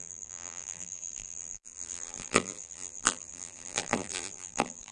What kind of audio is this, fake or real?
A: fake